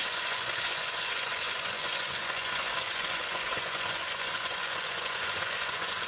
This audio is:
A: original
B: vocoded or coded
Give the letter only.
B